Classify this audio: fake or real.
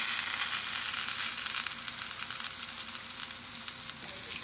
real